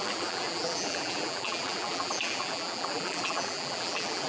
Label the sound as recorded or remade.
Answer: remade